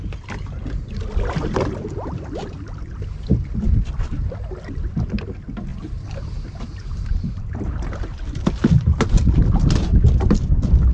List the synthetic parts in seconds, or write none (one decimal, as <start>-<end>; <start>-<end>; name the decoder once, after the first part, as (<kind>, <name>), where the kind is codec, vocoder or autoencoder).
5.7-8.4 (vocoder, BigVGAN v2)

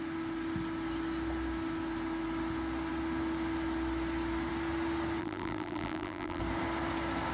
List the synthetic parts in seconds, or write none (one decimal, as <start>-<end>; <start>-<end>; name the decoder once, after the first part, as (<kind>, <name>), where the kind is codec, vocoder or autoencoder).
5.2-6.4 (vocoder, BigVGAN v2)

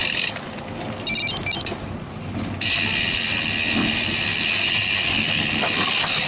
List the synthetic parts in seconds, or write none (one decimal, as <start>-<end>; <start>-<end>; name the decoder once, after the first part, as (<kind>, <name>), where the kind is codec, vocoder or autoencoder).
none

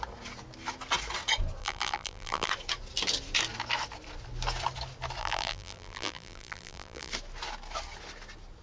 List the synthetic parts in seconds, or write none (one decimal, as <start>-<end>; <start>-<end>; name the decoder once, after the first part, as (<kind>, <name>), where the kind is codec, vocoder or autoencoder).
1.6-2.5 (vocoder, BigVGAN v2); 5.2-7.1